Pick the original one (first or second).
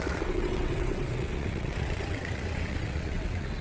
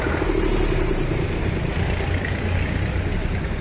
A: second